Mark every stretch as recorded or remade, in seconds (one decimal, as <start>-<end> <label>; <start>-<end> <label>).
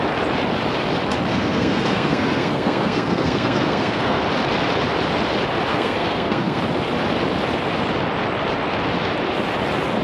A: 0.0-1.3 recorded; 1.3-4.2 remade; 4.2-5.7 recorded; 5.7-6.6 remade; 6.6-10.0 recorded